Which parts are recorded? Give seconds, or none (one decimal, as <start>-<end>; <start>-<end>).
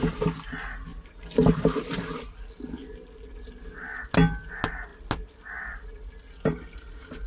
0.0-7.3